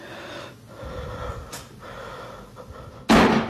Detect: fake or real real